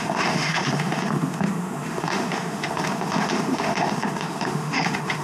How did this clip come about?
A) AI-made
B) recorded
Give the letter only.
A